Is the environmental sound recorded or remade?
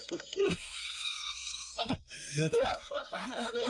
remade